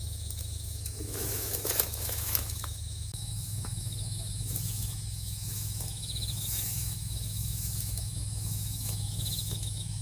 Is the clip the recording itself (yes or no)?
no